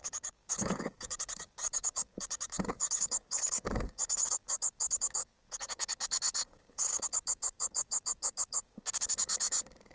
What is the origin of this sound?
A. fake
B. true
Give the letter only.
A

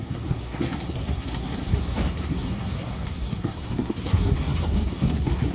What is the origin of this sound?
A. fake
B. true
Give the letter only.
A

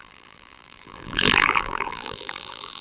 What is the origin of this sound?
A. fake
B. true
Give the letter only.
A